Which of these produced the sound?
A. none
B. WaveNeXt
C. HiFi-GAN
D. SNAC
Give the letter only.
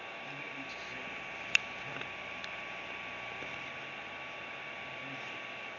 A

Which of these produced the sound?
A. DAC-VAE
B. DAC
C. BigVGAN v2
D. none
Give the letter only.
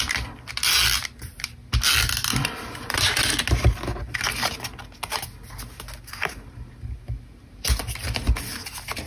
D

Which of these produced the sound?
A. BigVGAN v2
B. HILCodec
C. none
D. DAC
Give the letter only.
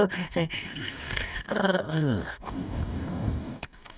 D